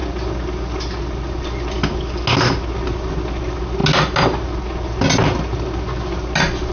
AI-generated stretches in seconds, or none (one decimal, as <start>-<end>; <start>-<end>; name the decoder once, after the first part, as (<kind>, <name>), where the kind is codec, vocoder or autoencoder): none